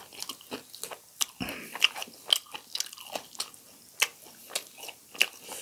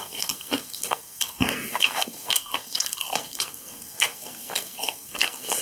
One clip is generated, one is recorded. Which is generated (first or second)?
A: second